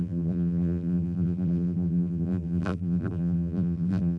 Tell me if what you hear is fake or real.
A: fake